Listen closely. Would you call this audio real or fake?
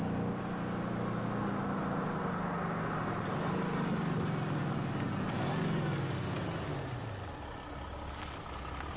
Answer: real